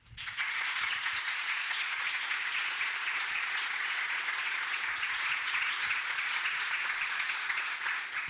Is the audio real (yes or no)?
no